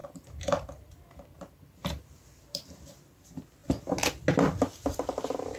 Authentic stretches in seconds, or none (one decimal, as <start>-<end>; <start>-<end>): 3.2-5.6